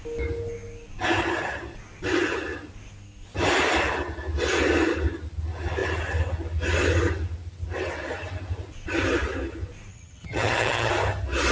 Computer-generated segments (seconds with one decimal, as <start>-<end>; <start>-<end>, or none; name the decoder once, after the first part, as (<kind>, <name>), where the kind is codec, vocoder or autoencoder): 9.9-10.9 (vocoder, HiFi-GAN)